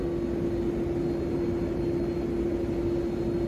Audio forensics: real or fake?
real